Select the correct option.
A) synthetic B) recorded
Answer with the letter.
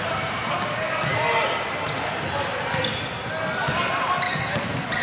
B